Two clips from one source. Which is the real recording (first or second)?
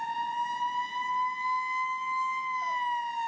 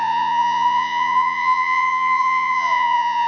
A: first